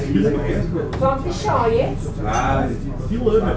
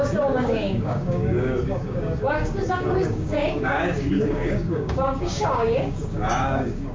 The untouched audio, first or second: first